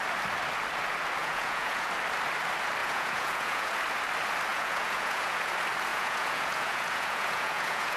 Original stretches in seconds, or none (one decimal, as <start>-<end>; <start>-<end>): 0.0-1.2; 1.9-2.8; 3.8-4.5; 5.5-5.9